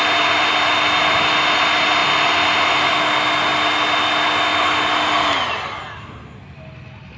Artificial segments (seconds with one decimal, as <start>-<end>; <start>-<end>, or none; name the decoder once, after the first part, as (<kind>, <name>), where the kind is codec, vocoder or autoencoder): none